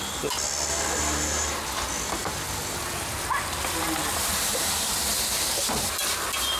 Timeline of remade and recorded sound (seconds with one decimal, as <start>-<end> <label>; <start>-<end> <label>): 0.0-6.6 recorded